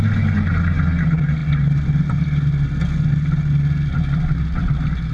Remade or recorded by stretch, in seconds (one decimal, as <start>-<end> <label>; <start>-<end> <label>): 0.0-5.1 recorded